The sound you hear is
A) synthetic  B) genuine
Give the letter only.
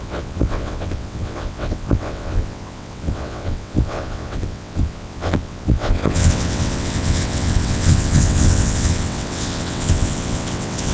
A